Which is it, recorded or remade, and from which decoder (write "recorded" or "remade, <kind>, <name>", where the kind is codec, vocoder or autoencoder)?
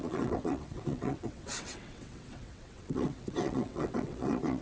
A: remade, vocoder, WaveNeXt